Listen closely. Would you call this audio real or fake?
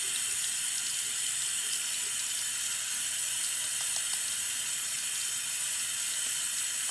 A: real